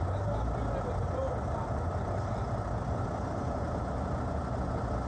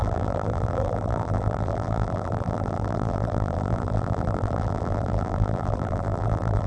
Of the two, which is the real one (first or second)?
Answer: first